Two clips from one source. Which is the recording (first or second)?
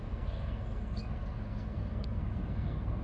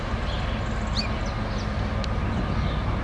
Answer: second